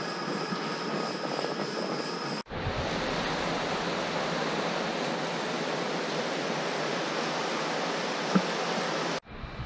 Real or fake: real